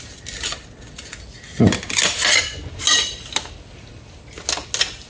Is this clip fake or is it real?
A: real